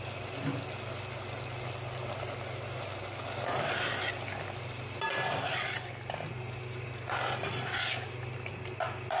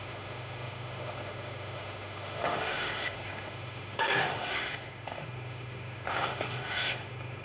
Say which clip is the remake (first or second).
second